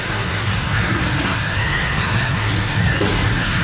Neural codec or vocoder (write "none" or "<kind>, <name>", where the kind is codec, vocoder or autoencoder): codec, SNAC